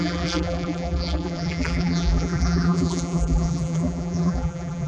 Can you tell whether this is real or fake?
fake